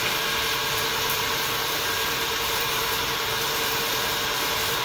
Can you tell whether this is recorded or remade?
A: remade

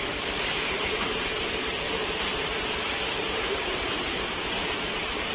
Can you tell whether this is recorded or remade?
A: remade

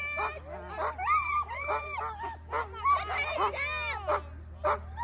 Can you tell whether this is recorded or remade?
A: recorded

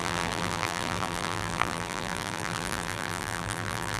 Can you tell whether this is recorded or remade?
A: remade